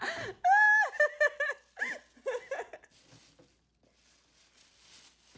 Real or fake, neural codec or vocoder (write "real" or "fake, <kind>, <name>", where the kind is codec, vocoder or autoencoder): real